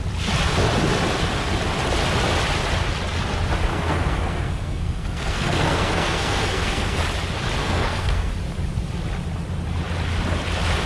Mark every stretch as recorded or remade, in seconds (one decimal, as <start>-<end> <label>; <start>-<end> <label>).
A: 0.0-3.7 recorded; 3.7-7.0 remade; 7.0-7.6 recorded; 7.6-8.3 remade; 8.3-10.9 recorded